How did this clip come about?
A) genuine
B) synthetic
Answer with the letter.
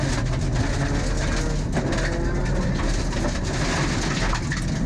A